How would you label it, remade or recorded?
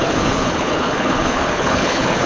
remade